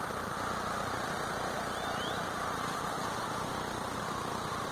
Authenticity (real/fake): real